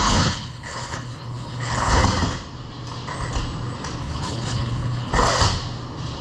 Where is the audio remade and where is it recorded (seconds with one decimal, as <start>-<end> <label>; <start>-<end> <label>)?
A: 0.0-2.0 remade; 2.0-4.0 recorded; 4.0-5.1 remade; 5.1-6.2 recorded